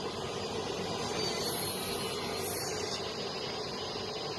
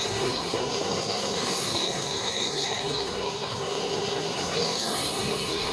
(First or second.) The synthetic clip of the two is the second